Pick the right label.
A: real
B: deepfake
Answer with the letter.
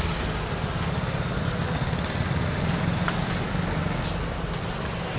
A